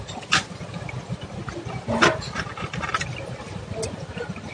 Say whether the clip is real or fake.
real